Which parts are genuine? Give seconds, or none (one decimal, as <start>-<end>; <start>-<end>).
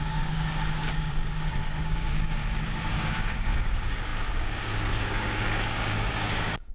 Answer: 2.4-2.9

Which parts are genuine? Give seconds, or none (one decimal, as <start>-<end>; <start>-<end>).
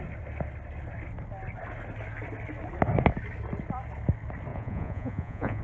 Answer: 0.0-4.5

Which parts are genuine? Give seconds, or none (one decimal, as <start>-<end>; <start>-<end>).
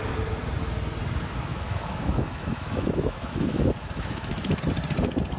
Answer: 0.0-1.5; 4.6-5.4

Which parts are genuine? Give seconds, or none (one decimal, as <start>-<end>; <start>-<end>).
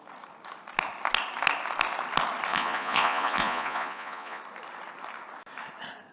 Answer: 0.0-2.5; 4.4-6.1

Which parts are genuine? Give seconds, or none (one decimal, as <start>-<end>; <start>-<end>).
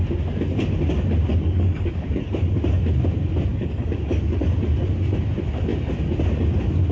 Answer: 0.0-1.3; 2.6-3.5; 4.5-6.9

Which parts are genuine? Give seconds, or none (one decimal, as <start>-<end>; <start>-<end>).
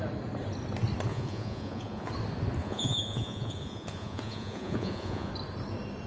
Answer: 0.0-1.1; 2.1-2.6; 5.3-6.1